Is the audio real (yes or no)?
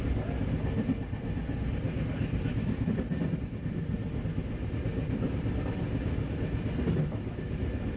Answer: yes